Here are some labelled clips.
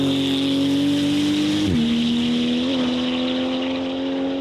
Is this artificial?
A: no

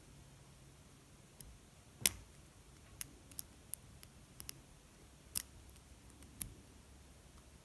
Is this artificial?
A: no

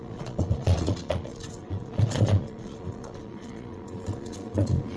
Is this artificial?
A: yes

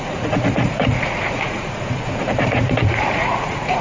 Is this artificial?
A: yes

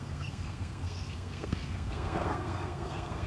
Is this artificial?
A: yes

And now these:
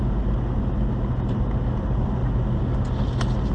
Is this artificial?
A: no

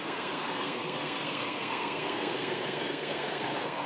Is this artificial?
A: yes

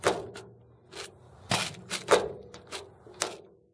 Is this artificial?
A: no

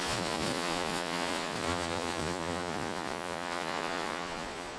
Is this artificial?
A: yes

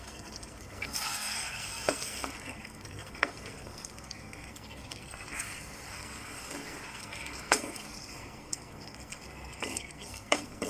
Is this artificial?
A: yes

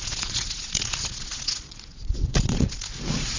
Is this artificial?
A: yes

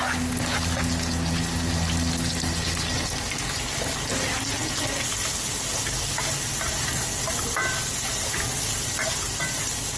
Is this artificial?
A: no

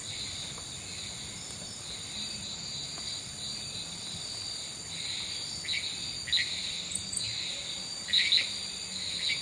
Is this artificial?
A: no